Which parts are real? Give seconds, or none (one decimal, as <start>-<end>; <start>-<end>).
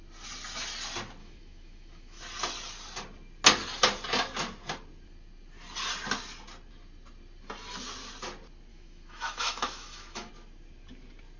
0.0-1.2; 2.2-8.7; 10.3-11.4